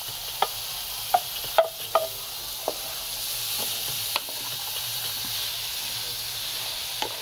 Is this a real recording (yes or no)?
yes